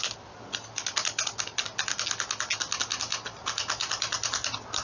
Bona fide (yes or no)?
yes